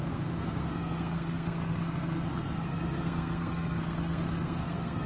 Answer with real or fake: fake